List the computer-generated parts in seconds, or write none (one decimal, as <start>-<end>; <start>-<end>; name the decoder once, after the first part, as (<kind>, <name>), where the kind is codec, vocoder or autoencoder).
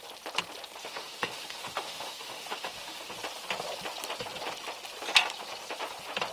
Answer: 0.8-3.1 (autoencoder, DAC-VAE)